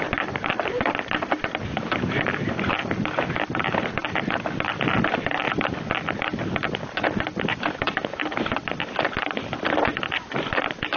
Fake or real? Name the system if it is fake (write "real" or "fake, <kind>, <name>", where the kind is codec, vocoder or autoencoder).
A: real